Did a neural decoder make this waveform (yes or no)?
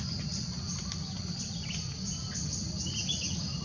no